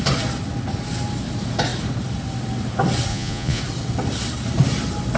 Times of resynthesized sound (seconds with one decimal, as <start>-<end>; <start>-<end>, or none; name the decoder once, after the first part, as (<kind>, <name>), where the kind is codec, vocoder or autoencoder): 3.1-3.6 (vocoder, Vocos)